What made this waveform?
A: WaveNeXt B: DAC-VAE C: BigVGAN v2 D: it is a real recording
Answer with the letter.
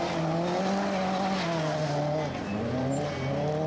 D